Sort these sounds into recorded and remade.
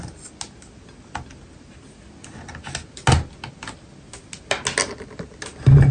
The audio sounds recorded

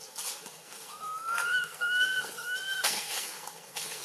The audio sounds remade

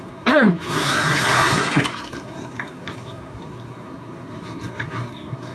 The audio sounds remade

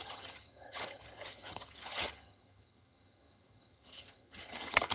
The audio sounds remade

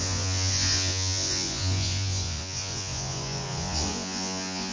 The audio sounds remade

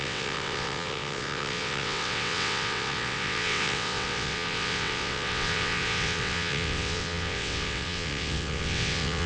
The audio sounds remade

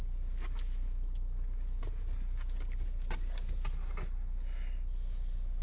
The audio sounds recorded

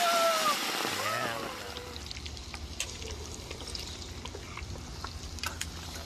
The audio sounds recorded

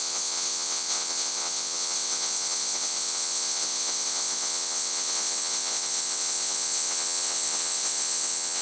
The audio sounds remade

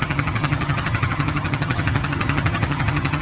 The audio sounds remade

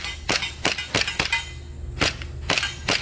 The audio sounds recorded